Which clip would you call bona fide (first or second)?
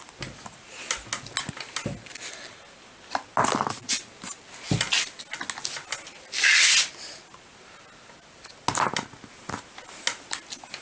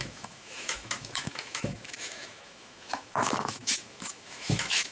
first